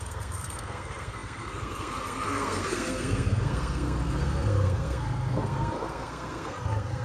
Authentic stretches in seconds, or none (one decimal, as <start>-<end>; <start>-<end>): none